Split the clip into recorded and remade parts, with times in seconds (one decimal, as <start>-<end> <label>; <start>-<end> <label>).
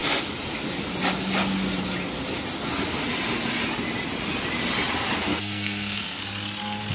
0.0-5.3 recorded; 5.3-6.2 remade; 6.2-6.9 recorded